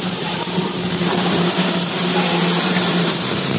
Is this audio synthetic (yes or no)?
yes